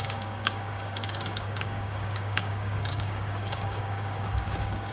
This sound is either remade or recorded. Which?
remade